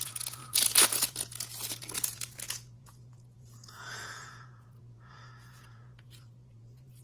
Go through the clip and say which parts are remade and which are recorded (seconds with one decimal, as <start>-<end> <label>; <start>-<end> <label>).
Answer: 0.0-7.0 remade